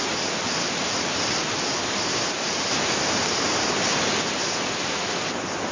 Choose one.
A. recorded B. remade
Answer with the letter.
A